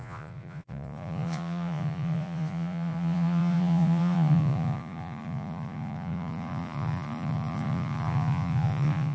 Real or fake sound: fake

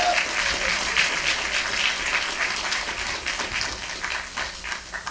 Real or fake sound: real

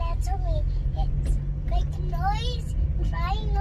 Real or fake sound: real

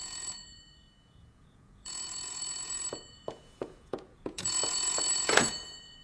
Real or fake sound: fake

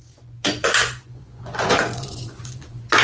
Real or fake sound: fake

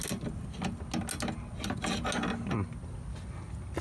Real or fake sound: real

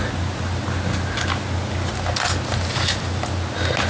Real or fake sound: real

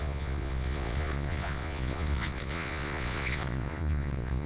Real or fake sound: fake